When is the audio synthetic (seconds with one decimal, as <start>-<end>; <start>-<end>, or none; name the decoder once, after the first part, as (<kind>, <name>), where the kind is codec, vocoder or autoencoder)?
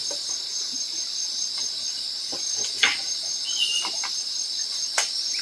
none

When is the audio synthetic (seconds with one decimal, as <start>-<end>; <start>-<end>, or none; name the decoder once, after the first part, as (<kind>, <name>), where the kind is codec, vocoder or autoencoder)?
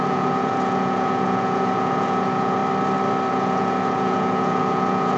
0.0-2.6 (vocoder, Vocos); 3.3-5.2